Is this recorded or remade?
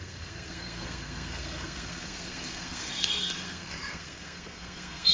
remade